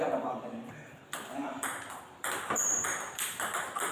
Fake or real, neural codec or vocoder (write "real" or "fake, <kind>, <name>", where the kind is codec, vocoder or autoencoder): fake, vocoder, BigVGAN v2